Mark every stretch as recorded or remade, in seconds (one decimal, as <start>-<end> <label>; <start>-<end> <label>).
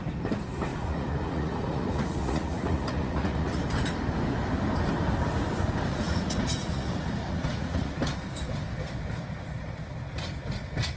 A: 0.0-0.7 recorded; 0.7-3.6 remade; 3.6-5.9 recorded; 5.9-7.9 remade; 7.9-11.0 recorded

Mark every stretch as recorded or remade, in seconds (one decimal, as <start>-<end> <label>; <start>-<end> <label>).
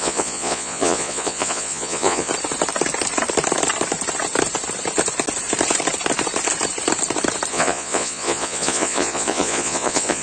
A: 0.0-2.3 remade; 2.3-7.5 recorded; 7.5-10.2 remade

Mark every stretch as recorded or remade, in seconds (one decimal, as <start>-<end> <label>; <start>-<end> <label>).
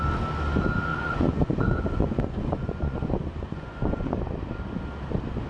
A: 0.0-0.9 recorded; 0.9-4.2 remade; 4.2-5.5 recorded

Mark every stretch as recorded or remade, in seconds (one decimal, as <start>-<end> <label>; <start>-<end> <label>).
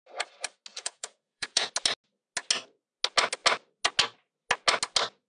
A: 0.0-0.7 recorded; 0.7-1.7 remade; 1.7-5.3 recorded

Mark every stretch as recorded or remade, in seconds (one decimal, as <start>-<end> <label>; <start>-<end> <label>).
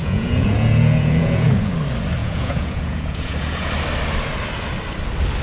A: 0.0-1.7 remade; 1.7-2.2 recorded; 2.2-3.7 remade; 3.7-5.4 recorded